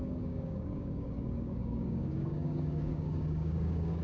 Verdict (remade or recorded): remade